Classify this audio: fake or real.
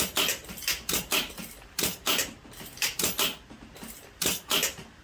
real